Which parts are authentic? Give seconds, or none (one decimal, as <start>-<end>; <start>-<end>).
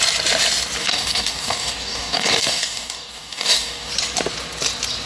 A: 0.0-0.8; 3.9-5.1